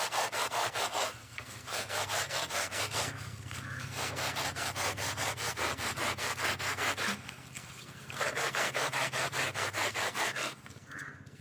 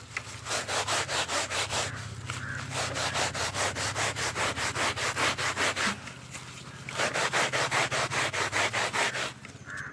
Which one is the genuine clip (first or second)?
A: second